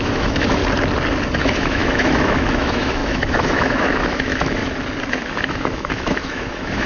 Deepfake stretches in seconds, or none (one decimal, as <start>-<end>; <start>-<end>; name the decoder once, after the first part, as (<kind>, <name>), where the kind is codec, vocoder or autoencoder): 0.0-0.6 (autoencoder, DAC-VAE); 1.4-4.6; 5.1-6.9